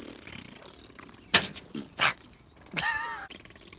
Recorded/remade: recorded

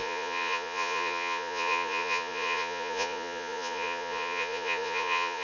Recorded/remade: remade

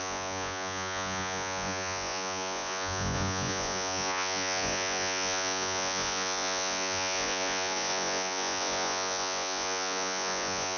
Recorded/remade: remade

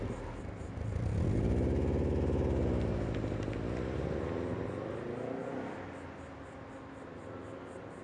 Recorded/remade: recorded